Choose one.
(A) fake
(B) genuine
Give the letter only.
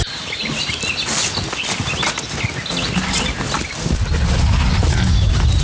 B